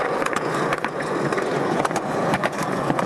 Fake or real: fake